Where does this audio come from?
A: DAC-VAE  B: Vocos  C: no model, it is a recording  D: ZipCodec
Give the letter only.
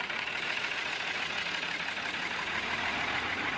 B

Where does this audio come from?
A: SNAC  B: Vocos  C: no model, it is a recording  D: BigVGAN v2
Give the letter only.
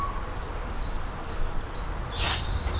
C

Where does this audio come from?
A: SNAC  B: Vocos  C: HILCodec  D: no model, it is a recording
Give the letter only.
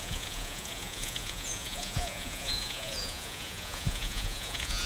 B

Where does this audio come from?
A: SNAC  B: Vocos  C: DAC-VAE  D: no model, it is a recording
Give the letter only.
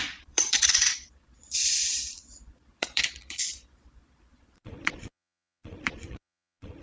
B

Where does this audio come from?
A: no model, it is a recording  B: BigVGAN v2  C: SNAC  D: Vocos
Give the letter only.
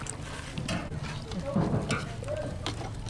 A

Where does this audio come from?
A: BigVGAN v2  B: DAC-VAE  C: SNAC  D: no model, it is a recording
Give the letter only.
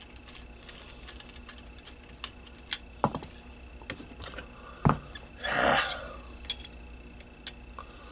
D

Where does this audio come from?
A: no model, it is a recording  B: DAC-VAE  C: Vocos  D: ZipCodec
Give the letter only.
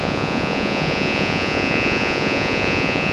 C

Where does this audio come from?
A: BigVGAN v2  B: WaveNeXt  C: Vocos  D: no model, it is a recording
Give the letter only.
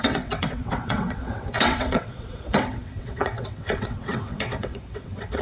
B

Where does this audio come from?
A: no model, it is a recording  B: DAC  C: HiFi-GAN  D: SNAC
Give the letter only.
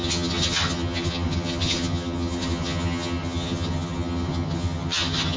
C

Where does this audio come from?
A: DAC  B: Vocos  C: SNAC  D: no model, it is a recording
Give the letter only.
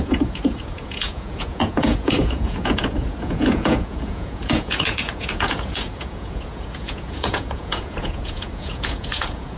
B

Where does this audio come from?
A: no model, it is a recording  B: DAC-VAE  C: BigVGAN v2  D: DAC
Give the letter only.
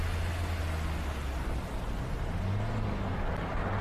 A